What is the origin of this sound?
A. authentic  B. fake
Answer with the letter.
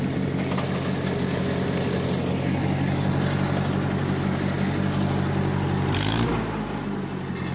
A